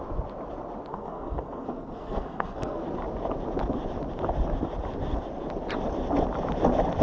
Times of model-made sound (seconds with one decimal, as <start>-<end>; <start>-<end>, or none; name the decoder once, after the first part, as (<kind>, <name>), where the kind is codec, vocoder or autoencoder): 0.9-2.8 (codec, SNAC)